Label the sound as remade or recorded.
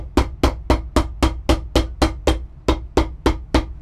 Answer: recorded